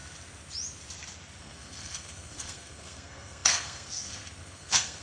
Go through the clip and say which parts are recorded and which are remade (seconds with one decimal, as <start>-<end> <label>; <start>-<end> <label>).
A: 0.0-1.4 recorded; 1.4-5.0 remade